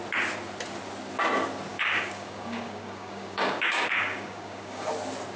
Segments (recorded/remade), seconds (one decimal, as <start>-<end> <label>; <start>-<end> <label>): 0.0-1.7 recorded; 1.7-4.9 remade; 4.9-5.4 recorded